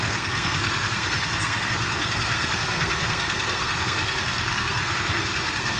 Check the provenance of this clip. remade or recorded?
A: remade